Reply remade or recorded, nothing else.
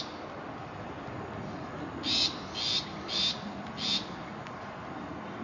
recorded